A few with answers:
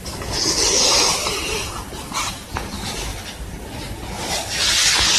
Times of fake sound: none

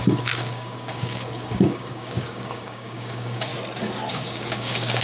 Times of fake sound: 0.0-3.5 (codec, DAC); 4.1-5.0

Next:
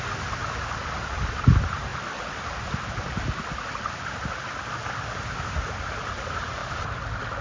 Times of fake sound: none